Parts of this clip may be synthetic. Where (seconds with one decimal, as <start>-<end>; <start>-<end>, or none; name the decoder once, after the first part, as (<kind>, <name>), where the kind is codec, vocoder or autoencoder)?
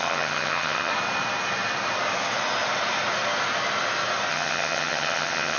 0.0-0.9 (vocoder, HiFi-GAN); 4.3-5.6